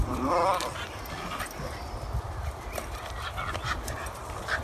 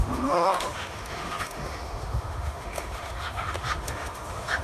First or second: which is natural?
first